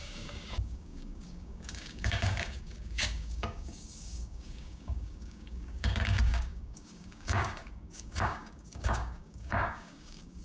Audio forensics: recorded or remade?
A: remade